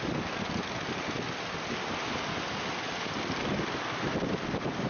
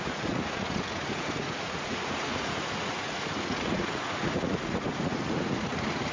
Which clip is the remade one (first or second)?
second